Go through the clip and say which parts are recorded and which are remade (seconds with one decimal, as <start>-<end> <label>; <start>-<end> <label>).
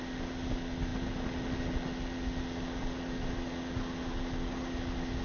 0.0-5.2 recorded